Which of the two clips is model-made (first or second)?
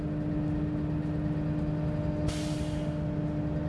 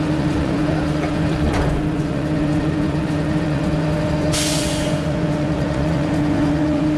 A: second